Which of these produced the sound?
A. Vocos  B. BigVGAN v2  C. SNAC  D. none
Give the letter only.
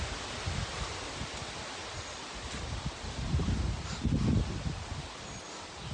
D